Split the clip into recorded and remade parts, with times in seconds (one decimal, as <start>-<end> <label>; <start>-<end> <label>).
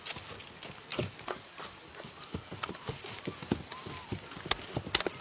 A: 0.0-5.2 recorded